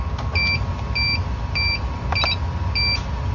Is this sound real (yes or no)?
yes